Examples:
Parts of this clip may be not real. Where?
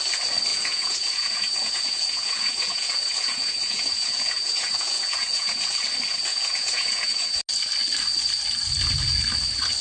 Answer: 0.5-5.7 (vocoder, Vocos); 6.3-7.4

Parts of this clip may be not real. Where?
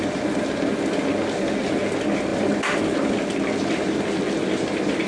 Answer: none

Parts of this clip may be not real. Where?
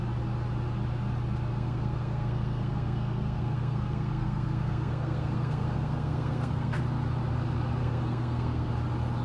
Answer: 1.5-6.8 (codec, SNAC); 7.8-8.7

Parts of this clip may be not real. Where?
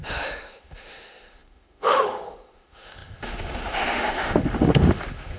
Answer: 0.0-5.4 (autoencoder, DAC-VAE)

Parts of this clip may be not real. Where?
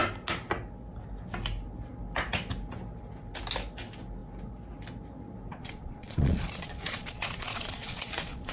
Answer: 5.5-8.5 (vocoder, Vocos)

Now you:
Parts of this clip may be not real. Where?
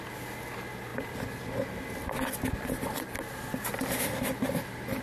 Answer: none